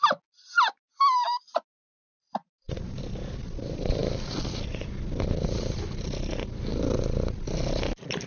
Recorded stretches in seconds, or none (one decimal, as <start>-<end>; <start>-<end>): 0.0-1.9; 3.0-8.3